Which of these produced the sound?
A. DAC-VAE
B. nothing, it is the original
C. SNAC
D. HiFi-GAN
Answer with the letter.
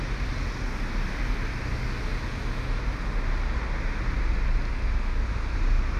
B